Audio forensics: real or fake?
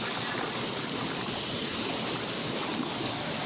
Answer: real